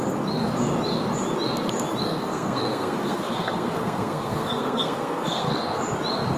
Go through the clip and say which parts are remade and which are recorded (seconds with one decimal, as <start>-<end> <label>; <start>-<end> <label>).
0.0-2.0 recorded; 2.0-5.8 remade; 5.8-6.4 recorded